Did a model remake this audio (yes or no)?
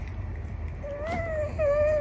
no